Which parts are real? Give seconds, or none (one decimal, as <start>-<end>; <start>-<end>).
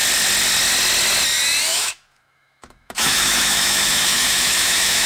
0.0-1.7